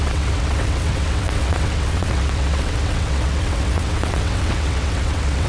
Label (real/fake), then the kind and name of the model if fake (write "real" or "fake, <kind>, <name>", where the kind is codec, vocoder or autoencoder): fake, vocoder, WaveNeXt